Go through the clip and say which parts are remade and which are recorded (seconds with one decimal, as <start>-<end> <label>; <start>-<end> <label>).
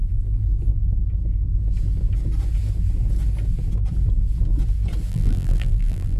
0.0-5.1 recorded; 5.1-6.2 remade